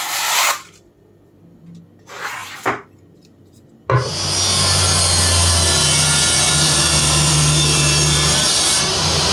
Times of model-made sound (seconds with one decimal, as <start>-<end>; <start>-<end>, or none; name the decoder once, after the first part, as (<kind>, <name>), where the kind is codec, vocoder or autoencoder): 2.4-3.7 (vocoder, BigVGAN v2); 7.0-9.3